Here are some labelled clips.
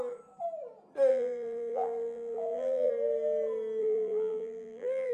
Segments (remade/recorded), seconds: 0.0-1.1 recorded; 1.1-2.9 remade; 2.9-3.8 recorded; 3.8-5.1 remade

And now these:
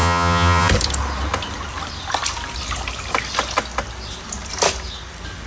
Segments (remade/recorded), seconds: 0.0-0.7 remade; 0.7-5.5 recorded